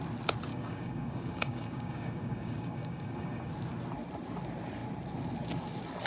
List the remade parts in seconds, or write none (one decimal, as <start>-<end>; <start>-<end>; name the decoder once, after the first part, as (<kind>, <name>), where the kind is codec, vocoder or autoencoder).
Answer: 0.5-3.5 (codec, DAC)